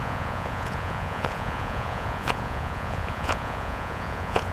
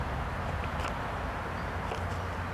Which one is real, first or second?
second